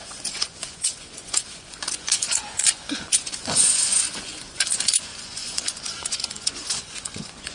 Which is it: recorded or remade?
remade